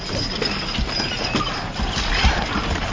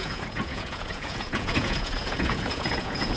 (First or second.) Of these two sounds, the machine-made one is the second